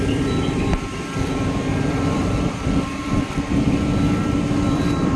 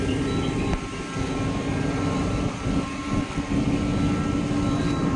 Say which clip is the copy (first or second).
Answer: first